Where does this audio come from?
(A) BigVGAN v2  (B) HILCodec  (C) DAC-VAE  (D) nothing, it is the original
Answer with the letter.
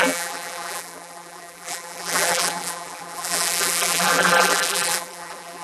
A